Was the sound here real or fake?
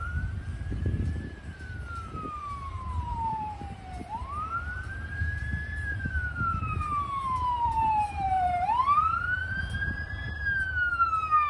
fake